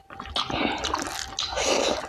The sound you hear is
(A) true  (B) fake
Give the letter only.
A